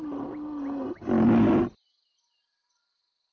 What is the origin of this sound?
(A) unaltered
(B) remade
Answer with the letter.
A